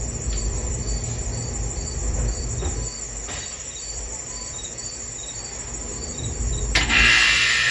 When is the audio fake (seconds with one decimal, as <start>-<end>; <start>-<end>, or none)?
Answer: 0.0-7.7